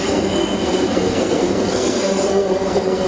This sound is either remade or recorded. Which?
remade